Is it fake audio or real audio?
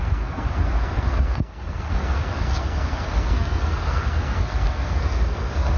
fake